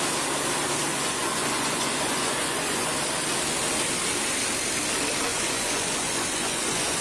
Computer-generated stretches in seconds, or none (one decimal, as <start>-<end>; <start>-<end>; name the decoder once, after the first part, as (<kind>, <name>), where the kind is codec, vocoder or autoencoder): 0.9-2.9 (vocoder, Vocos); 5.3-7.0